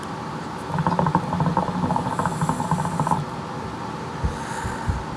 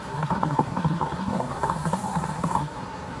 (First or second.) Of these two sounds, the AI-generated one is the second